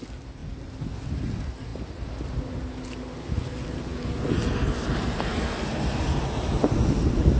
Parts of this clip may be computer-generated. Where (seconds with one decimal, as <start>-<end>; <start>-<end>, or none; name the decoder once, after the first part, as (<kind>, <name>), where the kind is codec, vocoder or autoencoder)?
none